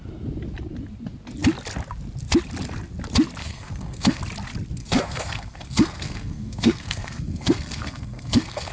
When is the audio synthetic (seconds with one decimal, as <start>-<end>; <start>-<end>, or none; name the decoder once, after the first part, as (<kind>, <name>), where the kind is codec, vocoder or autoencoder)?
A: 3.4-4.2 (codec, SNAC); 4.8-8.7